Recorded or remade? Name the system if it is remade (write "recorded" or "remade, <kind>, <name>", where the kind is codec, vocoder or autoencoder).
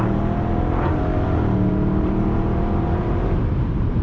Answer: remade, vocoder, BigVGAN v2